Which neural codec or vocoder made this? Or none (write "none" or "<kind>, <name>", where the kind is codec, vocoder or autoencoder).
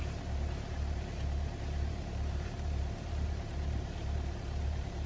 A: vocoder, BigVGAN v2